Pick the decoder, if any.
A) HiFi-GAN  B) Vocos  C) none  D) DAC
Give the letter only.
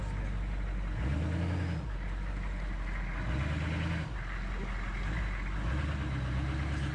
C